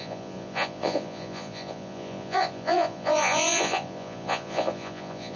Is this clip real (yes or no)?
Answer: no